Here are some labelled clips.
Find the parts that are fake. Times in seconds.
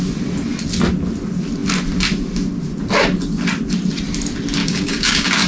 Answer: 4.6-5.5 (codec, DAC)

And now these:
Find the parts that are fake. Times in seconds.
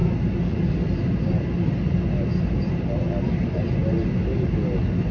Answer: none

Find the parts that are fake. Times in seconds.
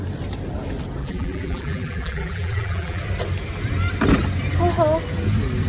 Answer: 1.0-3.0 (vocoder, BigVGAN v2)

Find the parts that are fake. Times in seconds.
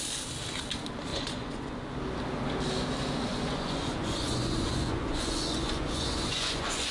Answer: 1.1-1.9 (vocoder, Vocos); 3.3-6.9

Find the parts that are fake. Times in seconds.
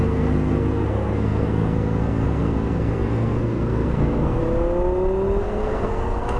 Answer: 0.0-4.4 (codec, SNAC); 5.4-6.4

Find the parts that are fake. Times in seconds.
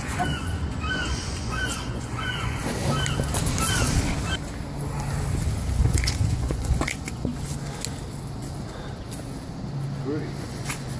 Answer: 0.0-2.6 (vocoder, Vocos); 5.7-7.3; 10.4-11.0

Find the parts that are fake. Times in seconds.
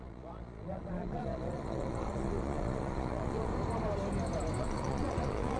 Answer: 0.0-3.5 (vocoder, Vocos); 4.6-5.6